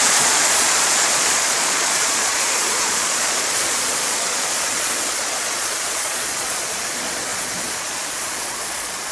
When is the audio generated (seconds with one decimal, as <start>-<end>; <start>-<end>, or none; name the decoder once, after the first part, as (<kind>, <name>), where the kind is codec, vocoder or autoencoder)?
0.0-9.1 (vocoder, Vocos)